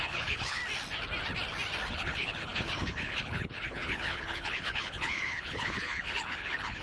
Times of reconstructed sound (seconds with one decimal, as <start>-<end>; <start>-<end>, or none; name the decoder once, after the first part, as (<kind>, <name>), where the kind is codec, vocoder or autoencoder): 0.0-0.6 (codec, HILCodec); 1.9-6.8